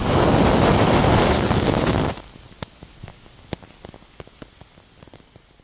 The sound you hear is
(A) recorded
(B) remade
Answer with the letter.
A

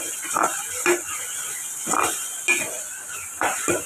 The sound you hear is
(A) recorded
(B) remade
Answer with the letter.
A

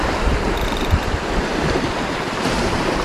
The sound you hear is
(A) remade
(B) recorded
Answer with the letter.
A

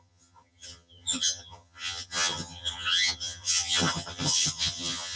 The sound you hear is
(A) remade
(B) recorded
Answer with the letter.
A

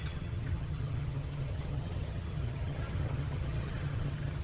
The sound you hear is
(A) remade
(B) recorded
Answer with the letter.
A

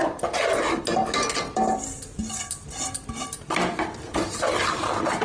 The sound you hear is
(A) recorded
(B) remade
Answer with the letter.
A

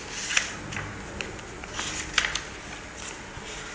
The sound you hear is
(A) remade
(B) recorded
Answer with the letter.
B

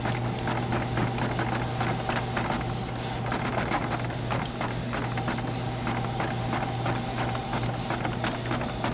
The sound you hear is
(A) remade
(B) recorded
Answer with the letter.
B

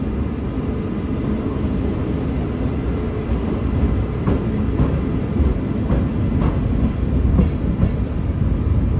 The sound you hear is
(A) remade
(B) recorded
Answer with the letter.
B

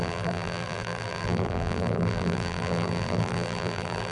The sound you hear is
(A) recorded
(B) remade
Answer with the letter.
B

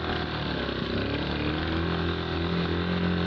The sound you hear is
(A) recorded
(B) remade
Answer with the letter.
A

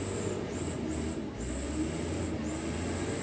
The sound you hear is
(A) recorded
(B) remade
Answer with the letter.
A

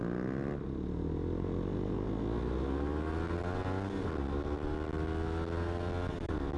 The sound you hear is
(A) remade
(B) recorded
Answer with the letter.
B